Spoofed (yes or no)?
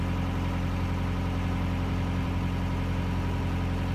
no